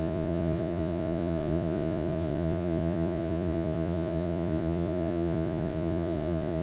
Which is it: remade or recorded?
remade